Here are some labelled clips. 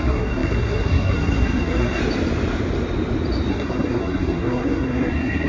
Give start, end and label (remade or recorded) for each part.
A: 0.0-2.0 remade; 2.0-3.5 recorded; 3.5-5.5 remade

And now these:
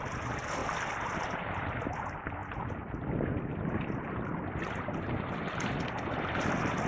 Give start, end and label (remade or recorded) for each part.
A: 0.0-6.9 recorded

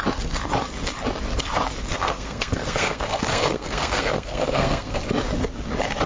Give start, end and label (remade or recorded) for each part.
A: 0.0-1.9 recorded; 1.9-5.0 remade; 5.0-6.1 recorded

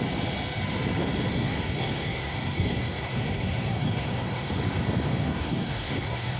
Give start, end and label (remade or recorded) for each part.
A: 0.0-1.3 recorded; 1.3-4.5 remade; 4.5-5.1 recorded; 5.1-6.4 remade